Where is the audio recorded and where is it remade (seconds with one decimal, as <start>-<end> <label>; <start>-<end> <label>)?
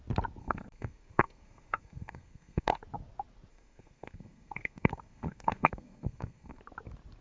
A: 0.0-0.4 recorded; 0.4-2.8 remade; 2.8-3.5 recorded; 3.5-6.6 remade; 6.6-7.2 recorded